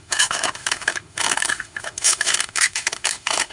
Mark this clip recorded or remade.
remade